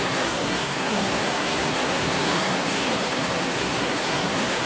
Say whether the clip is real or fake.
fake